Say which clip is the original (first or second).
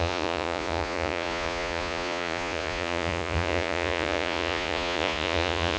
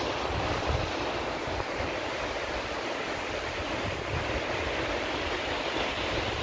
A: second